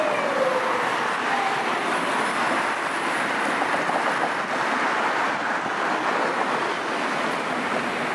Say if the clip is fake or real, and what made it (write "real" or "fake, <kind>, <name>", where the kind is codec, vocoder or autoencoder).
real